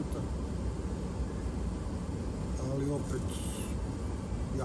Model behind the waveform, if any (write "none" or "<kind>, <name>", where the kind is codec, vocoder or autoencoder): none